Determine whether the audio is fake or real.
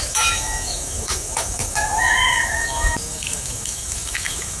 fake